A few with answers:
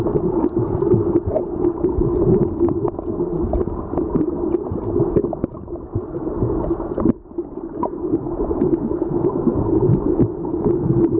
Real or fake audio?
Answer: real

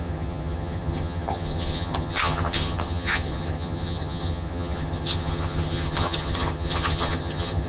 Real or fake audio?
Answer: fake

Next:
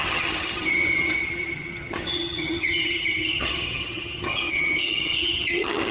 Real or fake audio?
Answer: fake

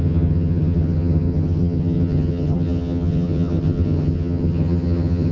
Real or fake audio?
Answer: fake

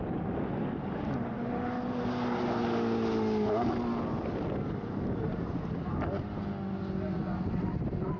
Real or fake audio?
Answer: real